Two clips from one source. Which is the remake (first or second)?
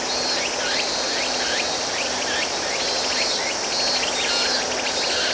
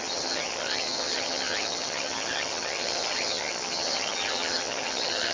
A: second